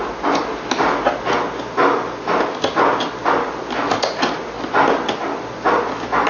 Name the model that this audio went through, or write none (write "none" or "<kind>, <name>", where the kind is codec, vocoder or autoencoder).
none